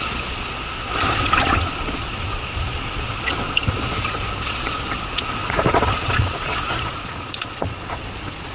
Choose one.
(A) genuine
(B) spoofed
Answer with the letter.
B